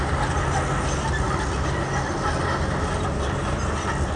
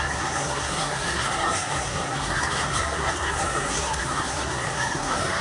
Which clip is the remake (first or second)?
second